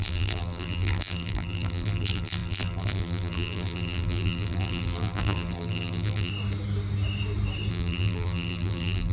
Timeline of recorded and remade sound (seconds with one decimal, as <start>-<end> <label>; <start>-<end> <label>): 0.0-6.3 remade; 6.3-7.7 recorded; 7.7-9.1 remade